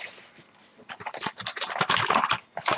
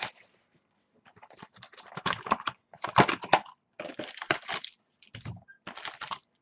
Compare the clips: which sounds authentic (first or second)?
first